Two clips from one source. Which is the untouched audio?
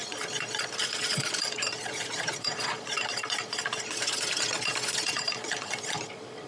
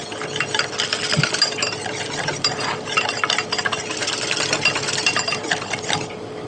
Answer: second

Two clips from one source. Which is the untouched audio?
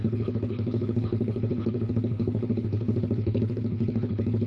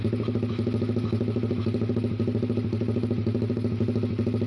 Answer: second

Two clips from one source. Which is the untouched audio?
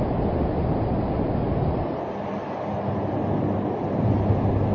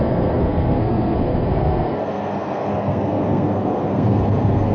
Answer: first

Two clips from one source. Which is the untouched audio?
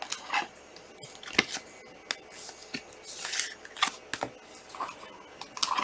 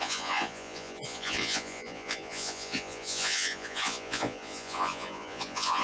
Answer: first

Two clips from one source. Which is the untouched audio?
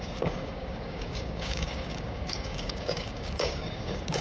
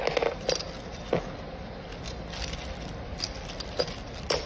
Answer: second